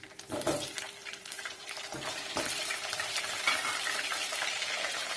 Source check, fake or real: fake